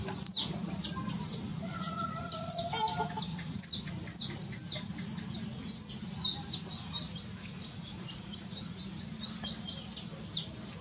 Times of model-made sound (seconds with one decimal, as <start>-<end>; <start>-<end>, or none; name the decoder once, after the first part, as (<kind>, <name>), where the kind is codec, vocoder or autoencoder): 1.5-2.7 (vocoder, Vocos); 3.3-3.9; 7.3-8.8